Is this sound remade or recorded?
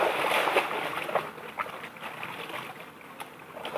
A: recorded